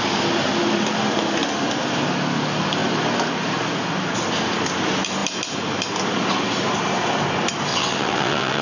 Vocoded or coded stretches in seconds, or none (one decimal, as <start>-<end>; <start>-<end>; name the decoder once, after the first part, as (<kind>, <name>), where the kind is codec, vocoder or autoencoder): 7.7-8.6 (vocoder, WaveNeXt)